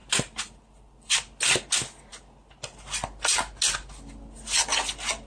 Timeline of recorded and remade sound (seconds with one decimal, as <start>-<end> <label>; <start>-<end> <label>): 0.0-5.3 recorded